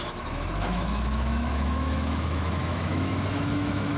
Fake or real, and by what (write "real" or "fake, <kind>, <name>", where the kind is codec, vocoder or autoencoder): fake, autoencoder, DAC-VAE